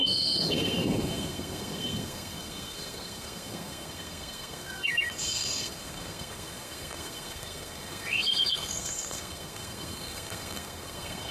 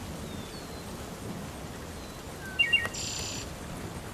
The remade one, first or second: first